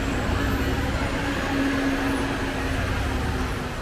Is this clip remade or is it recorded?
recorded